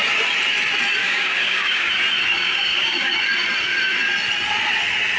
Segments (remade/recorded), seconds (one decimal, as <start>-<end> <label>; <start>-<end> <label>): 0.0-1.0 recorded; 1.0-1.9 remade; 1.9-2.3 recorded; 2.3-3.1 remade; 3.1-5.2 recorded